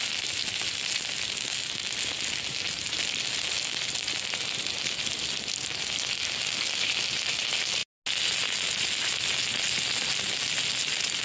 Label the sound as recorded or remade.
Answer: recorded